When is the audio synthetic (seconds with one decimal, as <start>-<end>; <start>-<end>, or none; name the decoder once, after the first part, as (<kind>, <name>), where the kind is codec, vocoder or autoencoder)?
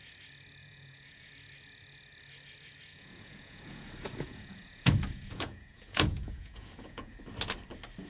0.6-1.3 (vocoder, Vocos); 2.9-7.1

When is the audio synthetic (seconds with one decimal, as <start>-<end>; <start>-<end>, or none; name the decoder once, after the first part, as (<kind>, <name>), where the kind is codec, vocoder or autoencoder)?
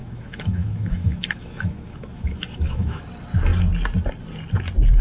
0.0-3.0 (autoencoder, DAC-VAE)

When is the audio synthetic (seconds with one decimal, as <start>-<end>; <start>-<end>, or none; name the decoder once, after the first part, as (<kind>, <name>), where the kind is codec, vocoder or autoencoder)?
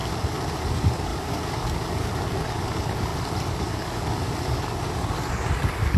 0.7-6.0 (codec, DAC)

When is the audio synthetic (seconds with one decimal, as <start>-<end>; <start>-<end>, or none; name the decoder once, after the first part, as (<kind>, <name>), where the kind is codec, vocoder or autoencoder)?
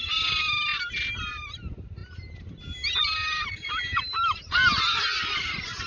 none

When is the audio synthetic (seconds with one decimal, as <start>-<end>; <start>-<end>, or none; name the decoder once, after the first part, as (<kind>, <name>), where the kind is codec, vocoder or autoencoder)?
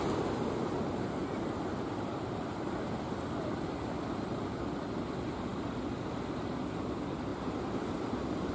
none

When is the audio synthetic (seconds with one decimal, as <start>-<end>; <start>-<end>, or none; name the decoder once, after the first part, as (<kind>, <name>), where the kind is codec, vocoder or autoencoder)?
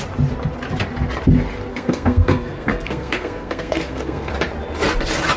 1.7-4.3 (codec, SNAC)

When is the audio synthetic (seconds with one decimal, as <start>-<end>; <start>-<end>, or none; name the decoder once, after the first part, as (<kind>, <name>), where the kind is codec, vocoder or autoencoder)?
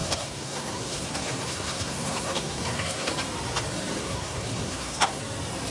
0.0-3.1 (codec, SNAC); 4.0-5.2